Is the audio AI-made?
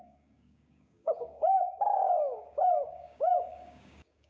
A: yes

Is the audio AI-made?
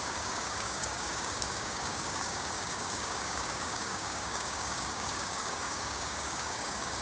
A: yes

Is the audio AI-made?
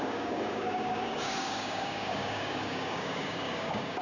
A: yes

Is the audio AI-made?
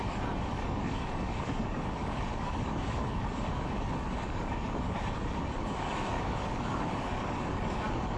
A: yes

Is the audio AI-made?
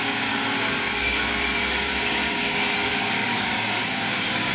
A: yes